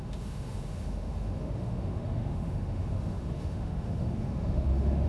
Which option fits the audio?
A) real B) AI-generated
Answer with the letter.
B